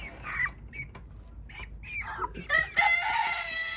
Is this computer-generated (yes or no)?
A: no